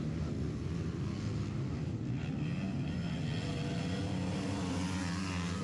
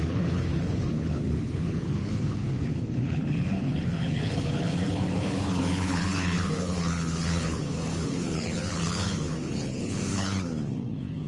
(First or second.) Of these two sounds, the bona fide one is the first